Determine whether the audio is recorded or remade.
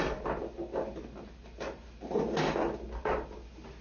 recorded